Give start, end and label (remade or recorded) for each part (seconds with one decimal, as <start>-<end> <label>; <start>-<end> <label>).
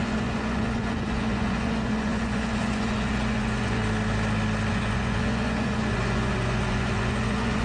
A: 0.0-3.8 remade; 3.8-4.7 recorded; 4.7-7.6 remade